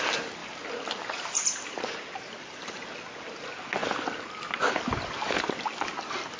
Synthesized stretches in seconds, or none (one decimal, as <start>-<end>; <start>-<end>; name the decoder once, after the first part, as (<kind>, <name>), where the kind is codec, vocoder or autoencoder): none

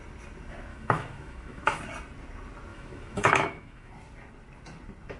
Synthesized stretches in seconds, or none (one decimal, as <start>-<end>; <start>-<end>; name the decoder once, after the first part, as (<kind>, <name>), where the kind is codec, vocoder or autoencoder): 0.7-1.8 (autoencoder, DAC-VAE); 2.7-3.9

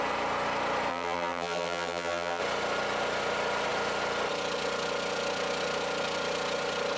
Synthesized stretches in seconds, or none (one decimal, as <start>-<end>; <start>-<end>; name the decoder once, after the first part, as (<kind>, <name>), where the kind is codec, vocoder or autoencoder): 0.9-2.4 (vocoder, BigVGAN v2)

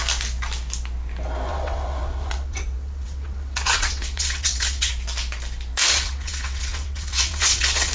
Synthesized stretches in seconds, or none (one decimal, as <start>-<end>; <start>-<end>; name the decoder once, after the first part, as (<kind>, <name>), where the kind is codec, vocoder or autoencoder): 1.5-4.9 (vocoder, WaveNeXt); 5.8-7.9